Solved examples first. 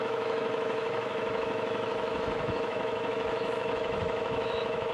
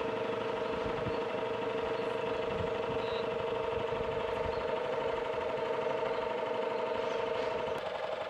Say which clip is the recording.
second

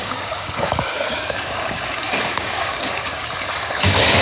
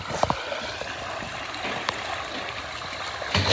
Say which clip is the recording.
second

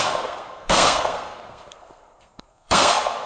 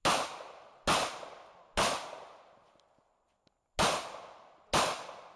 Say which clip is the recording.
second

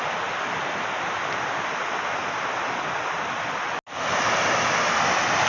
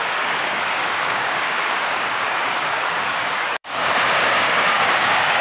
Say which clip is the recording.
first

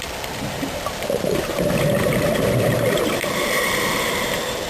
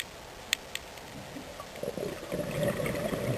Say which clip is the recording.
second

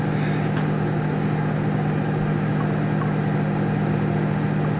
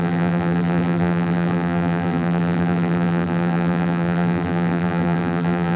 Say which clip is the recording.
first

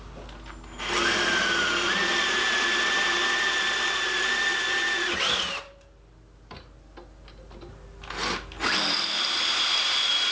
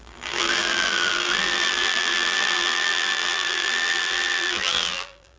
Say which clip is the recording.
first